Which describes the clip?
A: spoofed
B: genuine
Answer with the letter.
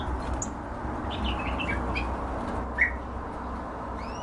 B